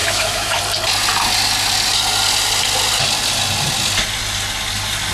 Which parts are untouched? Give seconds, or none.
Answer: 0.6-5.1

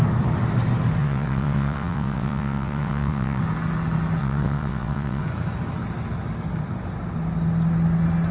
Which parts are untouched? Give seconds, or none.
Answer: 0.0-1.0; 3.4-4.2; 5.2-8.3

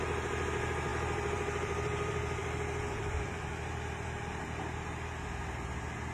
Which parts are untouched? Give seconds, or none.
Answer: 0.0-0.9; 4.6-6.1

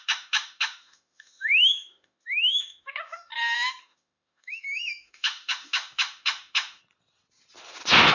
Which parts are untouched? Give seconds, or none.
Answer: 3.3-3.8; 6.8-8.1

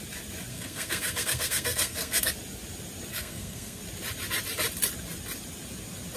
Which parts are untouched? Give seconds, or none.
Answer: 0.0-0.5; 2.3-3.1; 3.8-6.2

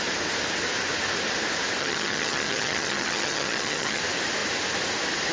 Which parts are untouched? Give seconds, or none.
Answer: 0.0-1.8; 4.0-5.3